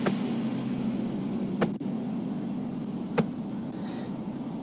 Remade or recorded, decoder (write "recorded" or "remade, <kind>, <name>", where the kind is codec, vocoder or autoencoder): recorded